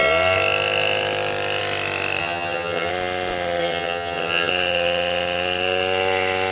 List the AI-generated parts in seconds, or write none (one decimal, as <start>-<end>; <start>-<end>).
2.2-2.9; 3.6-4.5

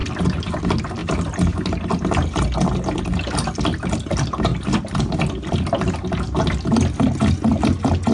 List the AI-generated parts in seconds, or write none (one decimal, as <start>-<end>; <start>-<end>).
none

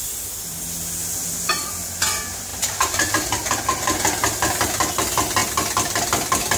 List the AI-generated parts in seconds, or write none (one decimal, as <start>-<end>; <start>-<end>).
2.5-3.1

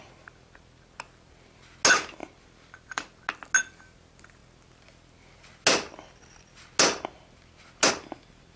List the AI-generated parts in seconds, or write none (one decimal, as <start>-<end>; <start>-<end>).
2.2-3.2

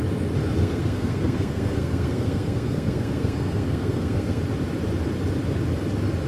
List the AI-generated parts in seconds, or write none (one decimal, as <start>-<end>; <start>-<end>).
0.6-4.4

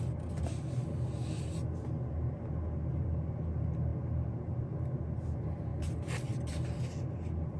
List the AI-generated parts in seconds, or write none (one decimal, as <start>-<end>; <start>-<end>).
none

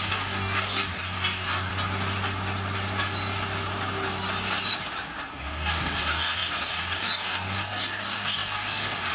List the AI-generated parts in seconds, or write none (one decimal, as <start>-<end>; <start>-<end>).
0.0-1.7; 5.3-9.1

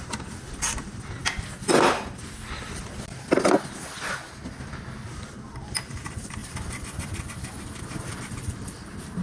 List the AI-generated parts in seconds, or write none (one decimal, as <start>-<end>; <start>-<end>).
0.0-1.2; 5.1-5.5; 6.0-6.4; 8.2-9.2